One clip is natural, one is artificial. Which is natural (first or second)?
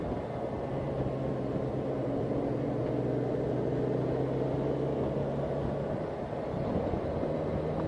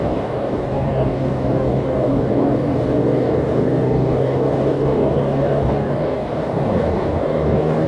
first